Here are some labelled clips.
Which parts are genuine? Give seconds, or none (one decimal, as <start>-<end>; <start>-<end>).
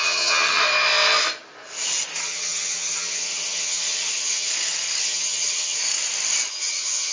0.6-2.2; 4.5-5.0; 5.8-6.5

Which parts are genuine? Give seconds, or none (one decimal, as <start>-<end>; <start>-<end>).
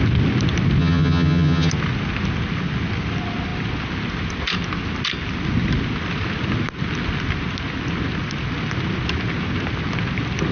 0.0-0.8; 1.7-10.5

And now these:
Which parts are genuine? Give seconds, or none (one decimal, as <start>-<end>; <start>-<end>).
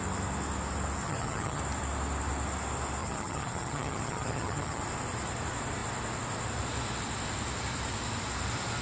0.0-1.0; 1.6-3.0; 4.8-8.8